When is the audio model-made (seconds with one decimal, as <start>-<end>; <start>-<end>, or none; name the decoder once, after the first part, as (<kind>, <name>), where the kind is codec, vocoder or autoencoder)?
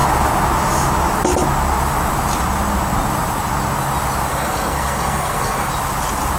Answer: 4.3-5.7 (codec, SNAC)